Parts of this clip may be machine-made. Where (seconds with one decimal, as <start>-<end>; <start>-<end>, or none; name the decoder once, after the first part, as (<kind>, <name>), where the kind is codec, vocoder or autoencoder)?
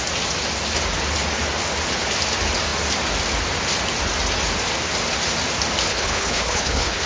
5.9-7.1 (codec, HILCodec)